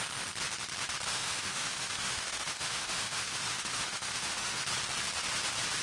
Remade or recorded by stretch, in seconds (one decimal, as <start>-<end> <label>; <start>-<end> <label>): 0.0-1.1 recorded; 1.1-4.6 remade; 4.6-5.8 recorded